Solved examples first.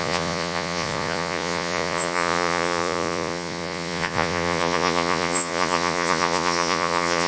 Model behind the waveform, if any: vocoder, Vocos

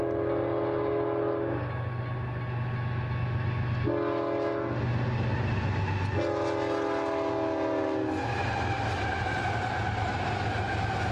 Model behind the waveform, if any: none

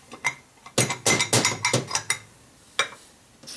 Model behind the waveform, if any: none